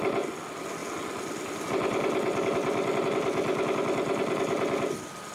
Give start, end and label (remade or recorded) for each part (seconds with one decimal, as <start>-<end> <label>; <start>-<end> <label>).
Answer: 0.0-5.3 recorded